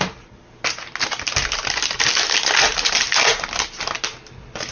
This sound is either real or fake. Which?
real